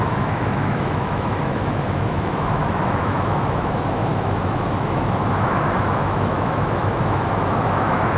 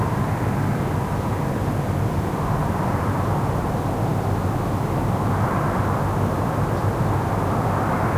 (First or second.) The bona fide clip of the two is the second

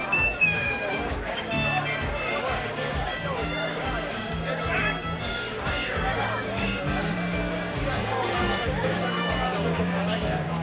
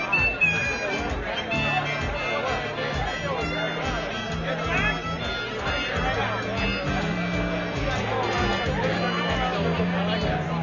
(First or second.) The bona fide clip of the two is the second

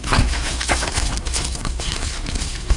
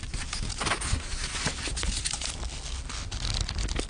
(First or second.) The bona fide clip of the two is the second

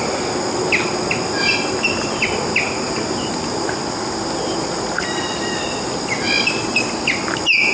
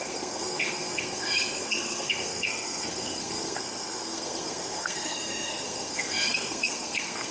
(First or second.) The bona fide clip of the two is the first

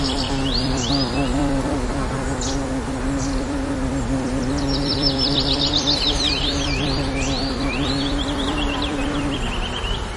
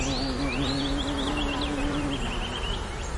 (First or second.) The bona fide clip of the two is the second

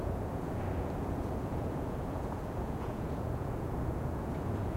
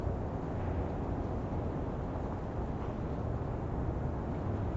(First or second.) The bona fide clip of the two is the second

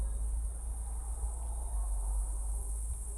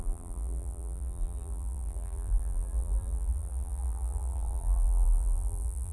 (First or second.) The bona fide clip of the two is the first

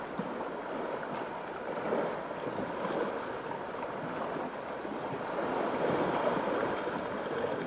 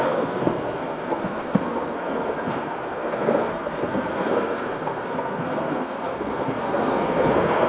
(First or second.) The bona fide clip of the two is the first